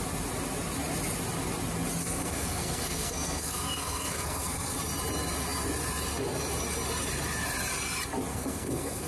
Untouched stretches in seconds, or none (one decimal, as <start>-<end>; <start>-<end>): 0.0-2.0; 4.8-8.3